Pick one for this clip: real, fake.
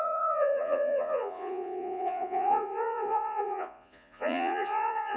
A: fake